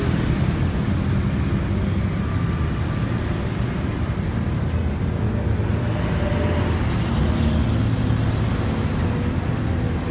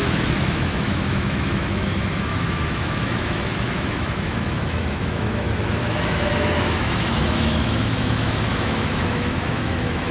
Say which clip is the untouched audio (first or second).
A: first